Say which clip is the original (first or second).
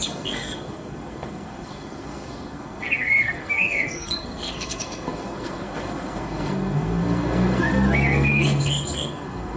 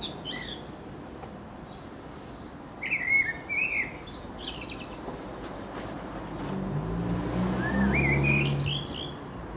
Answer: second